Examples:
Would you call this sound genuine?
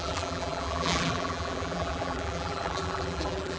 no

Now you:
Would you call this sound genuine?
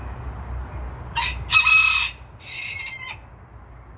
yes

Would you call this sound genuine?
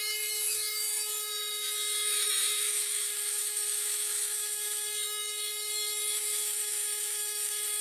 no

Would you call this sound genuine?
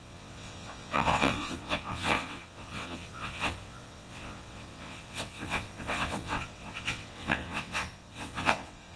no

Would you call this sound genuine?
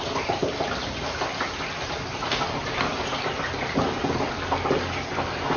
yes